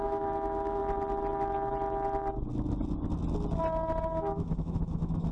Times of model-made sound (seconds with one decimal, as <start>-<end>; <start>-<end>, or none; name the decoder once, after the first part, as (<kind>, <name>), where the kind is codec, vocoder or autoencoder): 0.0-0.8 (autoencoder, DAC-VAE); 4.0-5.3